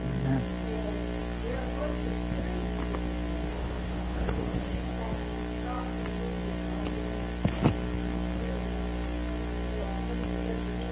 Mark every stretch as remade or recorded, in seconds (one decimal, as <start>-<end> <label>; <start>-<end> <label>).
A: 0.0-3.5 recorded; 3.5-4.9 remade; 4.9-10.9 recorded